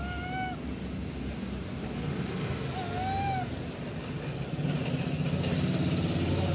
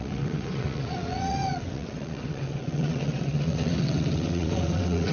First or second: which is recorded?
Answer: first